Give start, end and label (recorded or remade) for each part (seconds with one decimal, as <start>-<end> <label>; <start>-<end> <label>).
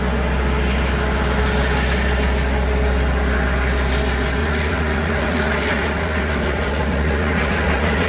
0.0-4.4 recorded; 4.4-8.1 remade